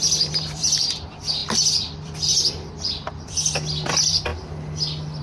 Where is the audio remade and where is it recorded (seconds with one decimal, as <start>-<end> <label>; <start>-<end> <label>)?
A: 0.0-4.3 remade; 4.3-5.2 recorded